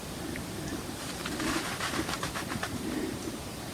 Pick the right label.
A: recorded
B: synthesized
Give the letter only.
B